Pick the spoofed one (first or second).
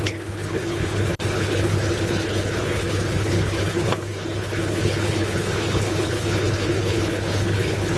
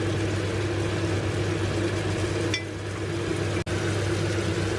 first